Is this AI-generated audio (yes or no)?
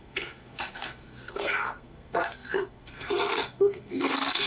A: yes